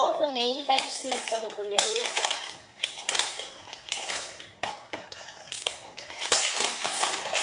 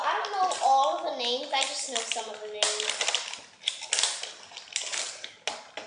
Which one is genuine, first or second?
second